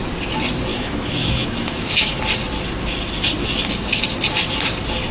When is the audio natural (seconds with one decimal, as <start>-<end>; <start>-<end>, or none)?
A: 0.0-0.7; 2.2-5.1